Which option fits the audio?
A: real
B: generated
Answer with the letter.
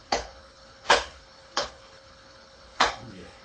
B